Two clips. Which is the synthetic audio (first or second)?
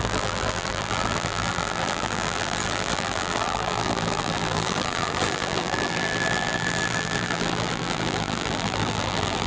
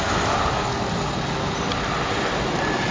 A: first